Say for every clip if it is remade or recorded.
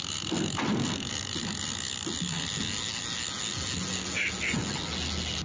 recorded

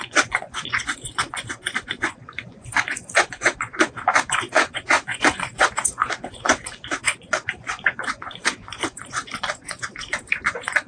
remade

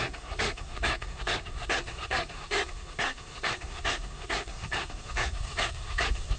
remade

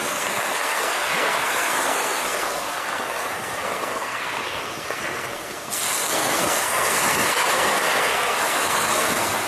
remade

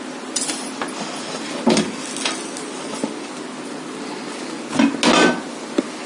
recorded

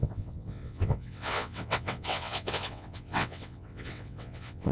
remade